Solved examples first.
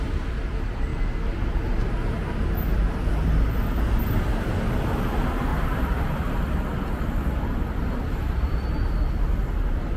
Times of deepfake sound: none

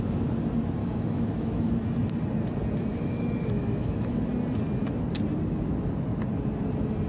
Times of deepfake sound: 0.8-1.7 (autoencoder, DAC-VAE); 2.9-4.3

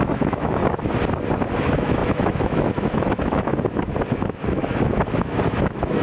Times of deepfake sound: 0.0-0.6 (autoencoder, DAC-VAE); 1.6-3.5; 4.1-6.0